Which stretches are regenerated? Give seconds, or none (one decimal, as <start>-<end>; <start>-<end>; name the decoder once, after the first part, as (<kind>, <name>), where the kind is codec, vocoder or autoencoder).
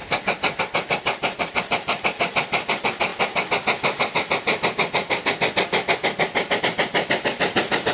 0.6-3.1 (vocoder, BigVGAN v2); 6.6-7.9